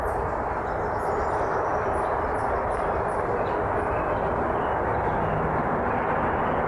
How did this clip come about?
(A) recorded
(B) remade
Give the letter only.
A